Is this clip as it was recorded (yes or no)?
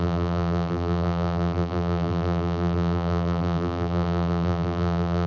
no